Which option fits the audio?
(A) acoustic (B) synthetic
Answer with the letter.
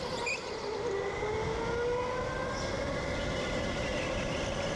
A